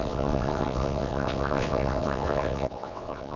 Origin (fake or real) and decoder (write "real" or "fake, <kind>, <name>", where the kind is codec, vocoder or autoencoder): fake, vocoder, WaveNeXt